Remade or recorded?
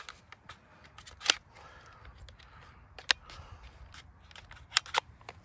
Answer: recorded